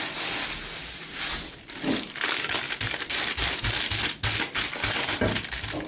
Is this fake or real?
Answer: real